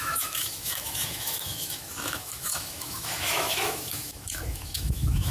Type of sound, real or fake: fake